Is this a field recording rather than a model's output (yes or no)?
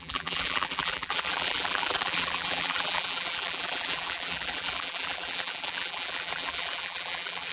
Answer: no